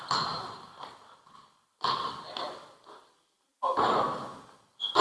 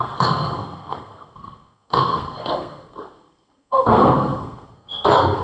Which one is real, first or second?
first